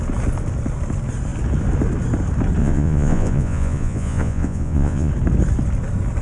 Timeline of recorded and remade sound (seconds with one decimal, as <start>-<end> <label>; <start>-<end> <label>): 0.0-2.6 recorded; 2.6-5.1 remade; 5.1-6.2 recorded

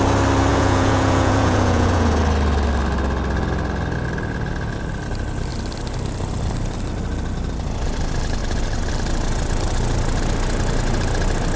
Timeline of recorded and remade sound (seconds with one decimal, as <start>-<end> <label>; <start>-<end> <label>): 0.0-0.5 recorded; 0.5-2.2 remade; 2.2-11.6 recorded

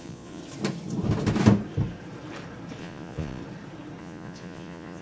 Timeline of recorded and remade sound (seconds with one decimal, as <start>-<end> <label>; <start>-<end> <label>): 0.0-0.4 remade; 0.4-2.8 recorded; 2.8-3.4 remade; 3.4-4.0 recorded; 4.0-5.0 remade

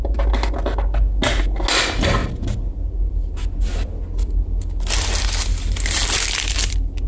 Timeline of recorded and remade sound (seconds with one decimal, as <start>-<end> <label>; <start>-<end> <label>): 0.0-7.1 recorded